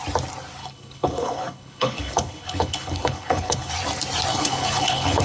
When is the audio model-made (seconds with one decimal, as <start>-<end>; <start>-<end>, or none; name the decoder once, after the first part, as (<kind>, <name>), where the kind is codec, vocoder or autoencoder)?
0.6-3.7 (codec, HILCodec); 4.3-5.2